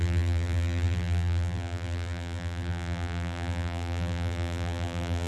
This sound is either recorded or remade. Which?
remade